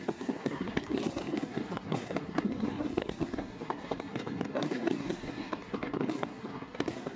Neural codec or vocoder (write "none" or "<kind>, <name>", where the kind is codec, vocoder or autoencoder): codec, SNAC